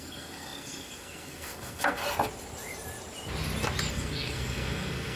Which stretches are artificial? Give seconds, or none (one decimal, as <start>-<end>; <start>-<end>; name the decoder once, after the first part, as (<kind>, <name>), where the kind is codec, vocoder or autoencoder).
0.0-2.0 (codec, SNAC); 3.9-5.2